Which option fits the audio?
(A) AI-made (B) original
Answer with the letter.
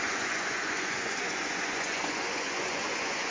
A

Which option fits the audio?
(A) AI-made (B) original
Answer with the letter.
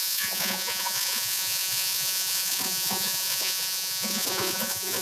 A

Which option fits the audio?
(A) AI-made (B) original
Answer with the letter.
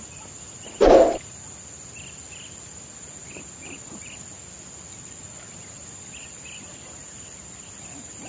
B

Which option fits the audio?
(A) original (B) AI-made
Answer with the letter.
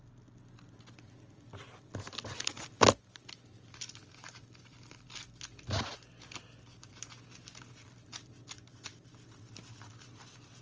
A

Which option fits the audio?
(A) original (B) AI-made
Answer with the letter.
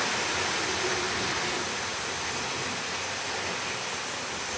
A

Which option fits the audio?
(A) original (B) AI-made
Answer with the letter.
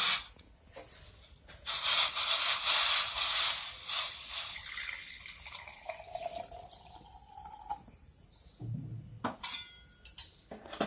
A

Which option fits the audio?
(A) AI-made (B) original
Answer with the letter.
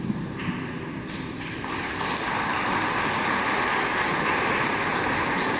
B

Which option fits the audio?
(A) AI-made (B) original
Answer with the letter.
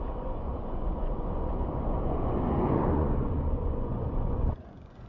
A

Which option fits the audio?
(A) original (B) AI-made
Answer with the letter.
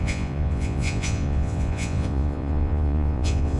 B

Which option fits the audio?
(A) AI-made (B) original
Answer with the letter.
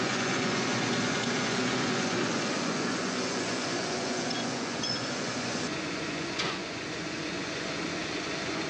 A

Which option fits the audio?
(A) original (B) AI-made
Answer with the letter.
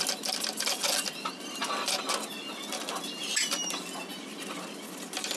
A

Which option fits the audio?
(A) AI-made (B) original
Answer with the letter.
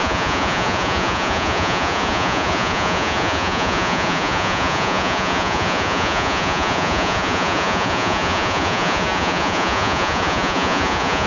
A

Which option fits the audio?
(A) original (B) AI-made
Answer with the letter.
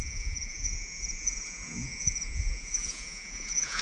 B